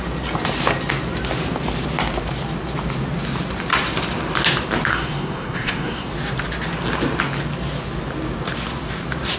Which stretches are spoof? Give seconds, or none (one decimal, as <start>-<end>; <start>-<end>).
4.9-6.1